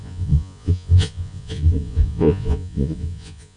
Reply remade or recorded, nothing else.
remade